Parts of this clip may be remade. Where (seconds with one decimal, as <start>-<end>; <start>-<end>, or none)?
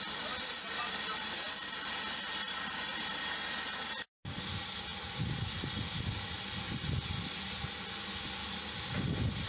8.4-9.1